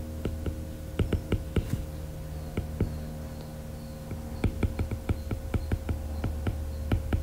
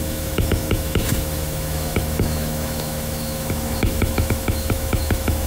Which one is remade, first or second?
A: second